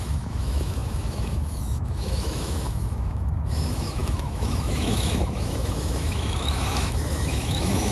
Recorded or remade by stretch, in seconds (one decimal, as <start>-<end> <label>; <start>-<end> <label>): 0.0-7.9 remade